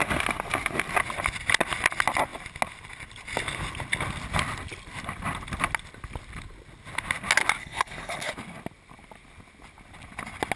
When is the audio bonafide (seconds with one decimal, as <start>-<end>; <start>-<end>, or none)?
0.0-7.6; 8.3-10.6